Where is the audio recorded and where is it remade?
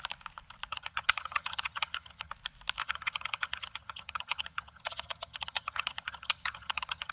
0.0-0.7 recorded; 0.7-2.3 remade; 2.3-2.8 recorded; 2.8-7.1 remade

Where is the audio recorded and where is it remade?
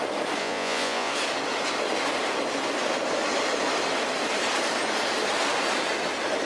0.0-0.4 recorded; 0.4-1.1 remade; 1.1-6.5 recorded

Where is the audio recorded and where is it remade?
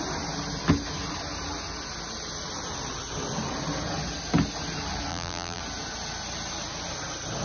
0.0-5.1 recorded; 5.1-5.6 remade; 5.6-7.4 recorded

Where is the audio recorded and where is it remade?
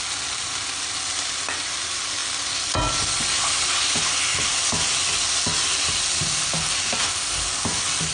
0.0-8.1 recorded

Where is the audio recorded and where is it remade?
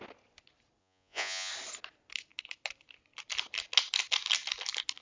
0.0-0.8 recorded; 0.8-1.5 remade; 1.5-5.0 recorded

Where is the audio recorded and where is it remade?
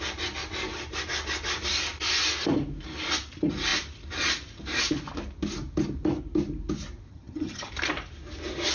0.0-7.1 recorded; 7.1-7.7 remade; 7.7-8.7 recorded